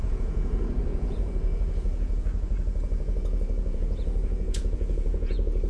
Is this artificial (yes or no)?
yes